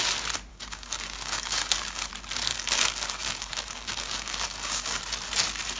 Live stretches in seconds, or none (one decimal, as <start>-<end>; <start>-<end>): 0.0-0.5; 2.1-2.5; 5.0-5.8